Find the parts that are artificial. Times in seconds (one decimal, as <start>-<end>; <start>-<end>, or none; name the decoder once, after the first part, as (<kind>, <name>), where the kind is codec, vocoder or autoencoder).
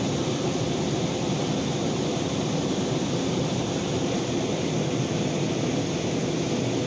2.1-4.3 (vocoder, BigVGAN v2)